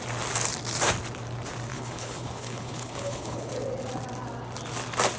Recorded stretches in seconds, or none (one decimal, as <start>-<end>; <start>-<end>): 0.0-1.7; 3.5-5.2